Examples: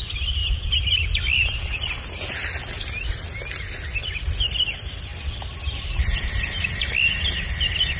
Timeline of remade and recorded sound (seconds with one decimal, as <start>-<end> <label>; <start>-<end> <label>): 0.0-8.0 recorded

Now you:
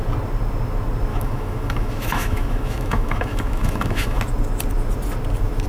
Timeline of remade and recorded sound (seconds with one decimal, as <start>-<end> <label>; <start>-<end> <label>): 0.0-1.1 recorded; 1.1-4.2 remade; 4.2-5.7 recorded

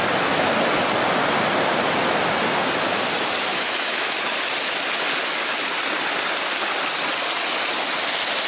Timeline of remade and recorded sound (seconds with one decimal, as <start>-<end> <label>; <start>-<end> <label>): 0.0-3.5 recorded; 3.5-4.3 remade; 4.3-8.5 recorded

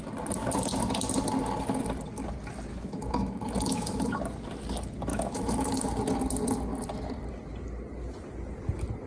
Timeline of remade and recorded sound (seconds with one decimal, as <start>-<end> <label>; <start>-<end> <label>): 0.0-2.7 recorded; 2.7-4.2 remade; 4.2-5.1 recorded; 5.1-5.9 remade; 5.9-9.1 recorded

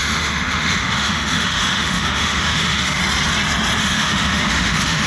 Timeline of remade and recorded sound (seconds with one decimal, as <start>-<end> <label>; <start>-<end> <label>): 0.0-3.0 remade; 3.0-3.8 recorded; 3.8-5.1 remade